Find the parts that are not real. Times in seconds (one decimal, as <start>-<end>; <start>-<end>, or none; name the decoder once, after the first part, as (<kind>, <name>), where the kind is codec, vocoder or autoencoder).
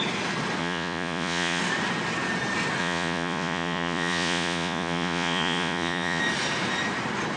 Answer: 0.6-1.6 (vocoder, Vocos); 2.8-6.2